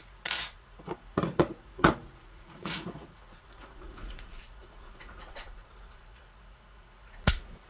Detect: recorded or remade remade